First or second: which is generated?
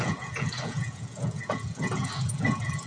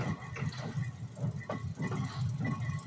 first